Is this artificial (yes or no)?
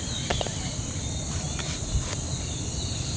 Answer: no